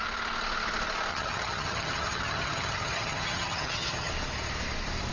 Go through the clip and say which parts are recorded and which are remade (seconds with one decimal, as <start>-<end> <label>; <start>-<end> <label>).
0.0-1.1 recorded; 1.1-4.1 remade; 4.1-5.1 recorded